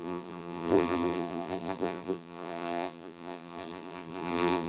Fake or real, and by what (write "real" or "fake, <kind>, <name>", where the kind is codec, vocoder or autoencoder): fake, vocoder, BigVGAN v2